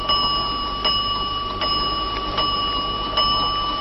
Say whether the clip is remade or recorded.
recorded